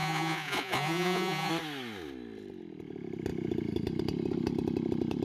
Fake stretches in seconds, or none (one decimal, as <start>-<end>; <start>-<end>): 0.0-1.5